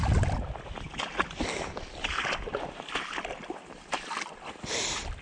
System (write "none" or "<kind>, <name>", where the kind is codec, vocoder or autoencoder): none